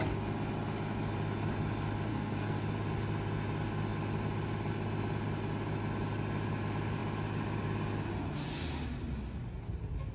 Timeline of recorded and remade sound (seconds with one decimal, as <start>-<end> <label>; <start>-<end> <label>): 0.0-2.1 recorded; 2.1-2.6 remade; 2.6-10.1 recorded